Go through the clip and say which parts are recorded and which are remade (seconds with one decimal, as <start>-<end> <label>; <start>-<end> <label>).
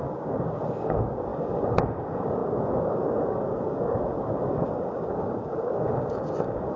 0.0-6.8 remade